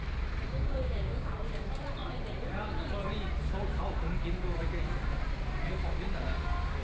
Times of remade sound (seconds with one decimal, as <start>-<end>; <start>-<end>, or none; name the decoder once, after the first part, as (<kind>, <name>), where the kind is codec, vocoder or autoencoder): 0.5-1.3 (codec, DAC)